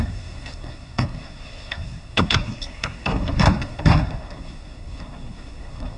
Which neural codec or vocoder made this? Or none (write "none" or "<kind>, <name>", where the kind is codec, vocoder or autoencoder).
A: codec, SNAC